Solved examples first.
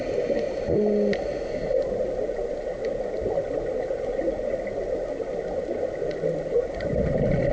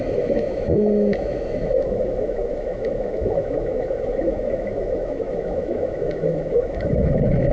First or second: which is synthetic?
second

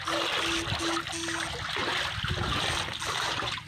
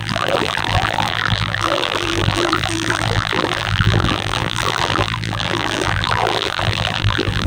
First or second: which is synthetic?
second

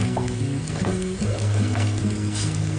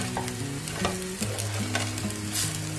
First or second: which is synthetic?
first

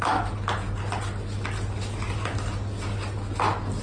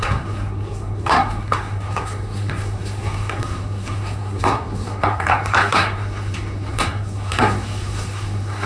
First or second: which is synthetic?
second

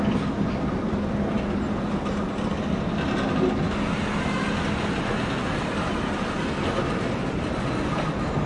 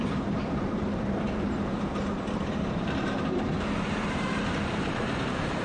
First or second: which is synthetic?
second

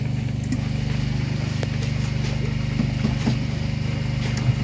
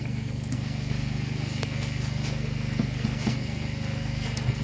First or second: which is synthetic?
second